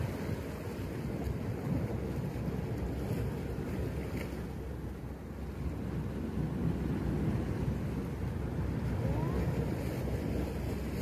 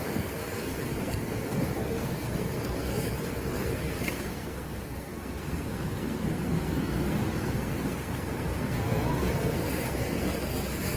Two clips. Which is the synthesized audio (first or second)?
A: second